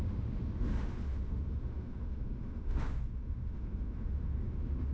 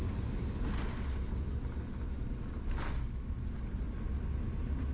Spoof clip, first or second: first